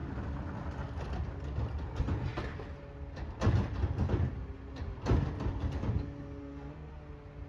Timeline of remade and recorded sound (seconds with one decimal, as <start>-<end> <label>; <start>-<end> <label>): 0.0-6.4 recorded; 6.4-6.9 remade; 6.9-7.5 recorded